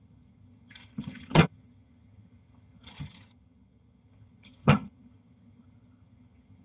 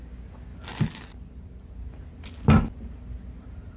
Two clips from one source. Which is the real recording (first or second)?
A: second